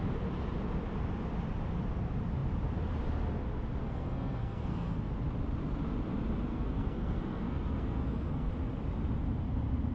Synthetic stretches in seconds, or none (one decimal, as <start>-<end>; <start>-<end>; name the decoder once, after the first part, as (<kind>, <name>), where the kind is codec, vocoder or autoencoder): 3.8-5.1 (codec, SNAC); 6.5-8.5

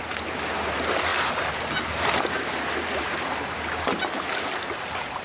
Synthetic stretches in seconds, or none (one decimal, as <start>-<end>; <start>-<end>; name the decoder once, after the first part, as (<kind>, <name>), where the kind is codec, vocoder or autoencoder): none

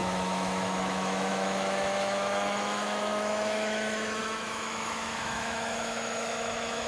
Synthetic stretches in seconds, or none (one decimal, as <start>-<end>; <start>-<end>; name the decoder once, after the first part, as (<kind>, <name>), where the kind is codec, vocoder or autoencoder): 0.0-6.9 (autoencoder, DAC-VAE)

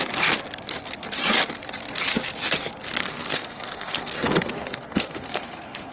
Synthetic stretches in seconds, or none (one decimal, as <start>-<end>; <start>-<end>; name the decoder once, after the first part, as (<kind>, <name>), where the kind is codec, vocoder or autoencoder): 3.0-5.9 (codec, SNAC)

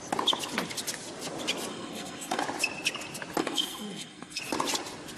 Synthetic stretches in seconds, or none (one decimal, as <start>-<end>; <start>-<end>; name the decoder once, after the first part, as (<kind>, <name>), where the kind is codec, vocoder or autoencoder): 1.7-2.4 (codec, SNAC); 3.4-4.4

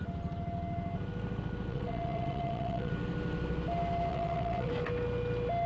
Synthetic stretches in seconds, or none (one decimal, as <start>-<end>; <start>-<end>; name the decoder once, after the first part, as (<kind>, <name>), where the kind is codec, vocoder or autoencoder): 1.7-2.9 (vocoder, WaveNeXt); 4.1-4.7

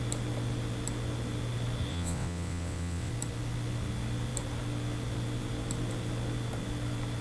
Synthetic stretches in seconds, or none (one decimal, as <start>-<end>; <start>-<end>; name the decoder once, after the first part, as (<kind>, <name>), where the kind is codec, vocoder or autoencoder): 1.9-3.1 (vocoder, WaveNeXt)

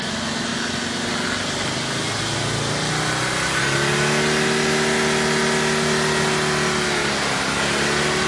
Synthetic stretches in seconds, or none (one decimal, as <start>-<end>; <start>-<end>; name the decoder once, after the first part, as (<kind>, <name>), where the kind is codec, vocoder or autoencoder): 7.0-7.5 (vocoder, BigVGAN v2)